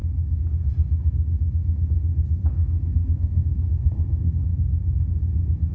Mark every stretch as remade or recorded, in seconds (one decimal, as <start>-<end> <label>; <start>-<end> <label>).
0.0-2.6 recorded; 2.6-4.4 remade; 4.4-5.7 recorded

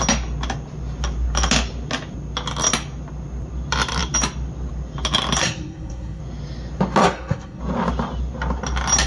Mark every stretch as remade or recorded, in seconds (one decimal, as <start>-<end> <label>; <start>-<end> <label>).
0.0-5.4 recorded; 5.4-6.2 remade; 6.2-7.0 recorded; 7.0-7.6 remade; 7.6-9.1 recorded

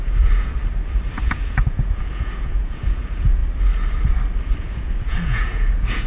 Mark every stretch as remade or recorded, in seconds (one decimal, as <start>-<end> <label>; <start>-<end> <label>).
0.0-0.6 remade; 0.6-1.2 recorded; 1.2-3.4 remade; 3.4-4.6 recorded; 4.6-6.1 remade

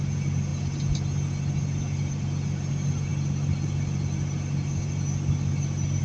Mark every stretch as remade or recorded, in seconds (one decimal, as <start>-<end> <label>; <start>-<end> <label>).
0.0-6.0 recorded

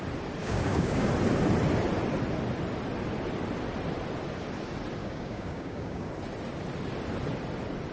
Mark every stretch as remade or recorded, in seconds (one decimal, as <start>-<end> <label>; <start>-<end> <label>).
0.0-0.4 recorded; 0.4-1.1 remade; 1.1-5.0 recorded; 5.0-6.1 remade; 6.1-7.9 recorded